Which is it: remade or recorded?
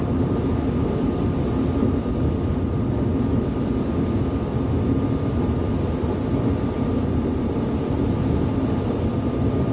recorded